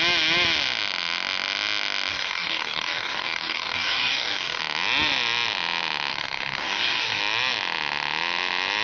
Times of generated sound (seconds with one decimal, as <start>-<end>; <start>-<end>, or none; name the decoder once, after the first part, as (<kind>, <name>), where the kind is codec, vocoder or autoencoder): 2.1-4.6 (codec, DAC); 6.1-7.2